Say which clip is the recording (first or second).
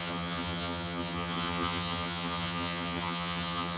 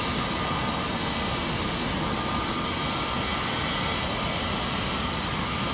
second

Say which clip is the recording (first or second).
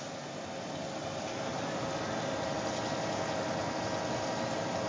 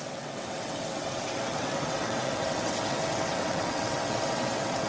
first